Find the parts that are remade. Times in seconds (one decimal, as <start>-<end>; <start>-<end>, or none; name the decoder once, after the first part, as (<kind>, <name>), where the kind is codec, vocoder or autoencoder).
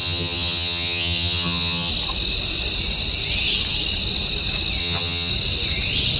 0.0-1.9 (vocoder, HiFi-GAN); 4.8-5.3